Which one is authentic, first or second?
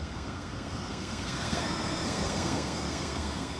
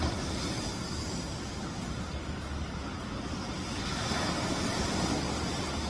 second